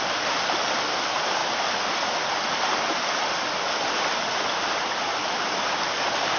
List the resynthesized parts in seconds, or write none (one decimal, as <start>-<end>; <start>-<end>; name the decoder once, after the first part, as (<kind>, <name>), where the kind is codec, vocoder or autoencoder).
none